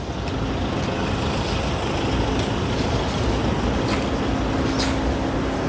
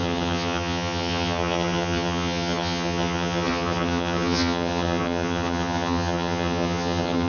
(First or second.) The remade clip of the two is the second